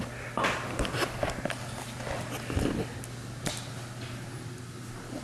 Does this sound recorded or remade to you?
recorded